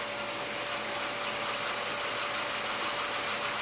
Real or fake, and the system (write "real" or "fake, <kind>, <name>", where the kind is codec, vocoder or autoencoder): real